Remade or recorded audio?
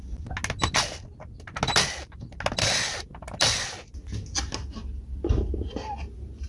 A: recorded